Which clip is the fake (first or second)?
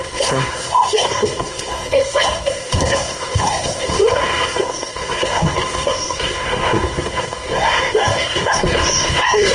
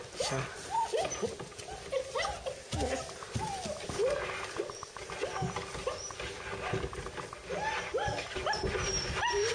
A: first